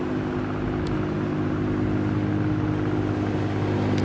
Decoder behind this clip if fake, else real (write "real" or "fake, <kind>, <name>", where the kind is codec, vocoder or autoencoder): real